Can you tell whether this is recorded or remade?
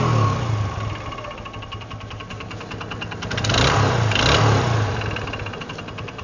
recorded